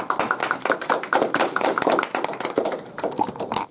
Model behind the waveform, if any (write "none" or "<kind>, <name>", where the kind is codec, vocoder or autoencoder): none